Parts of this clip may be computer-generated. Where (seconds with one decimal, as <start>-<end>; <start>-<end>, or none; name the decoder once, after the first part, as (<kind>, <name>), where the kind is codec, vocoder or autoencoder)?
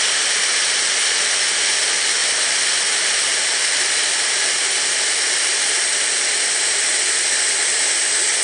2.2-7.2 (vocoder, BigVGAN v2)